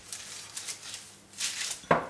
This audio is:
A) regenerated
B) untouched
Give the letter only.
B